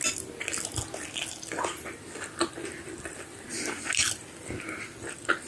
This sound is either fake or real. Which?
real